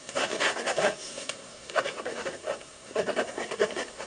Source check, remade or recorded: remade